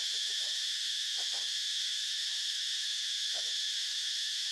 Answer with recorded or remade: remade